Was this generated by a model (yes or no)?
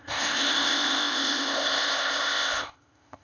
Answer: yes